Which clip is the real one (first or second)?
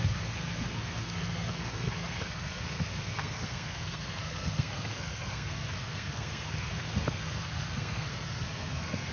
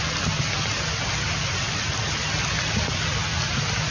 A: second